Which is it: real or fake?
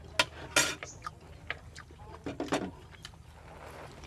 real